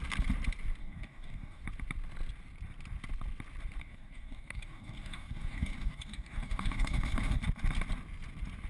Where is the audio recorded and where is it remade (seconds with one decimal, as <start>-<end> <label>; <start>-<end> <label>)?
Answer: 0.0-0.8 recorded; 0.8-1.6 remade; 1.6-3.8 recorded; 3.8-7.4 remade; 7.4-8.7 recorded

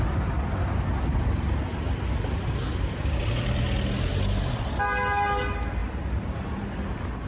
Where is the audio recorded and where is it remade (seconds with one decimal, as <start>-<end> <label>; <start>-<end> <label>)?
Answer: 0.0-7.3 recorded